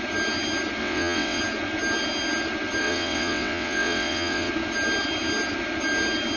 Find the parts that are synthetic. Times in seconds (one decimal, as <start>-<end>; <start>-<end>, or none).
0.8-1.4; 2.8-4.5